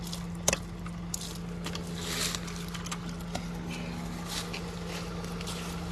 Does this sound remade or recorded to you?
recorded